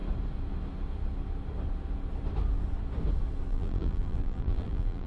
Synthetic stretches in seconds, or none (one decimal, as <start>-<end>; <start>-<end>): 3.5-5.1